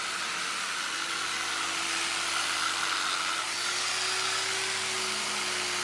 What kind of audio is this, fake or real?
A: real